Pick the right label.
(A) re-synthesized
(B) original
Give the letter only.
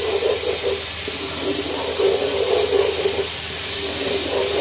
B